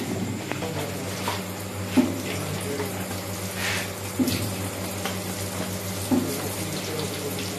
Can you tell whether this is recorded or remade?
recorded